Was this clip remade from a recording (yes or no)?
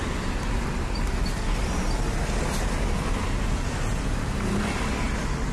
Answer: no